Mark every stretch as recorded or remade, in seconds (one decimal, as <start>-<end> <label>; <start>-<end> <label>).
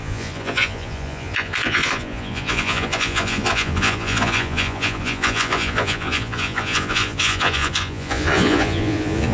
0.0-9.3 remade